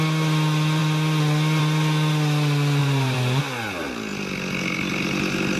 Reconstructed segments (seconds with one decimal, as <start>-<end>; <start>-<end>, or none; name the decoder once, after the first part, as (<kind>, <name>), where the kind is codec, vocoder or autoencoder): 2.8-3.4 (vocoder, BigVGAN v2)

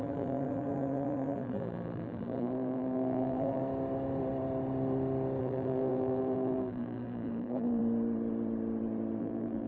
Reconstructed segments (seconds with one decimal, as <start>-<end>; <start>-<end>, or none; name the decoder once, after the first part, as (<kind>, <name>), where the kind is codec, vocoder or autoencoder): 0.0-3.6 (vocoder, BigVGAN v2); 5.4-7.8; 9.2-9.7

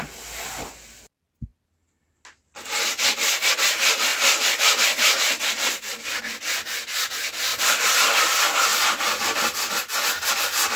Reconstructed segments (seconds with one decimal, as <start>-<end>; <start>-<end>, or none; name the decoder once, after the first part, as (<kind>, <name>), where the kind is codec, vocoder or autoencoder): 4.1-6.2 (vocoder, BigVGAN v2); 7.5-8.2

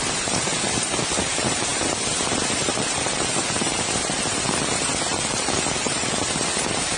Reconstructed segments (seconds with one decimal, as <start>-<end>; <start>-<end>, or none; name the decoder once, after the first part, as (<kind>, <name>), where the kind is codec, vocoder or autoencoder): 0.0-0.5 (vocoder, BigVGAN v2); 1.2-7.0

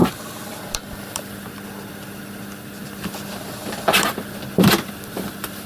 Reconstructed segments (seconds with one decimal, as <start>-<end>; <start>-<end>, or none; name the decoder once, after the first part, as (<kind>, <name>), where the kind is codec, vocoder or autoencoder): none

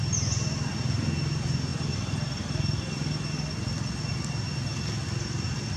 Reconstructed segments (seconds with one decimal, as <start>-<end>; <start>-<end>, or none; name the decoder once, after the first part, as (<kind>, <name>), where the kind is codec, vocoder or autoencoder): 1.7-4.1 (vocoder, BigVGAN v2)